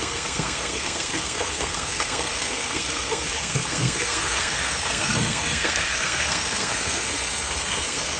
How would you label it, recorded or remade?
remade